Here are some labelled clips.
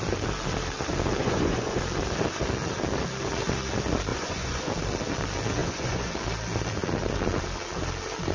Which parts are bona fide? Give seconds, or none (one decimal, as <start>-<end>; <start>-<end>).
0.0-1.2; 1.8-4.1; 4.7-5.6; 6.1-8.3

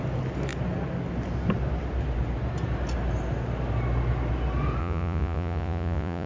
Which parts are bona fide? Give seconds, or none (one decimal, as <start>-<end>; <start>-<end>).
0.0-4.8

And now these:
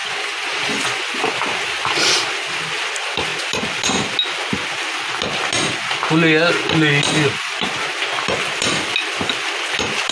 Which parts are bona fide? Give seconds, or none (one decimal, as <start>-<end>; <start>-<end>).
1.1-10.1

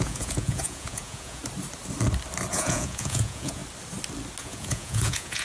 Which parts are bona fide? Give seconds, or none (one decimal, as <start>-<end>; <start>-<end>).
1.4-2.5; 3.6-4.4

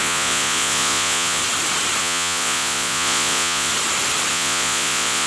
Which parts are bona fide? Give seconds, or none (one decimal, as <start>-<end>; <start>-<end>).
1.4-2.0; 3.7-4.3